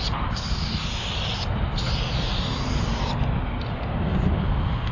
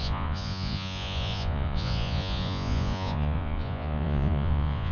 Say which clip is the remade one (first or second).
second